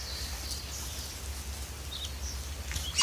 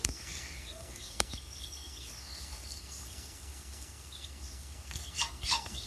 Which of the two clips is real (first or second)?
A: first